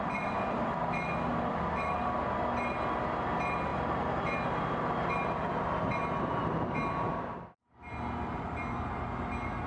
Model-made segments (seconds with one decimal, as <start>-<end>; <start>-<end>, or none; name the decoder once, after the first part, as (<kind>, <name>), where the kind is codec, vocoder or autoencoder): 1.3-2.2 (vocoder, BigVGAN v2); 3.7-7.6